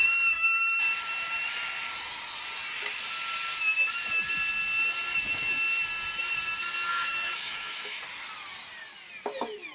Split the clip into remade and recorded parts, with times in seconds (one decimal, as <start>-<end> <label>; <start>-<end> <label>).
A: 0.0-0.8 remade; 0.8-6.9 recorded; 6.9-8.0 remade; 8.0-9.7 recorded